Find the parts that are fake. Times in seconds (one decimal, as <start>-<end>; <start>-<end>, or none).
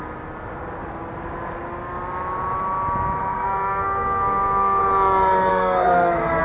3.2-4.8; 5.5-6.4